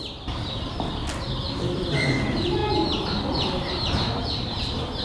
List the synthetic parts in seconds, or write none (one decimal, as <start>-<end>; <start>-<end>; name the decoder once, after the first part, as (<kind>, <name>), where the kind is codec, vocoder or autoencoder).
0.0-1.0 (vocoder, BigVGAN v2); 1.5-2.6; 3.4-5.0